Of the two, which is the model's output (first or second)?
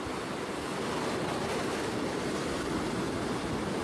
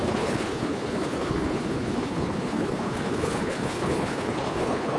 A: second